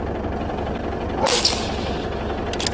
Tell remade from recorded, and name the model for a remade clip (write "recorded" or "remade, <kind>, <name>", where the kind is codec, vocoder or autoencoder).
recorded